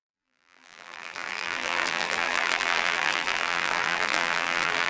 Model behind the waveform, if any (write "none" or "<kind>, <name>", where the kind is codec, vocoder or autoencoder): vocoder, BigVGAN v2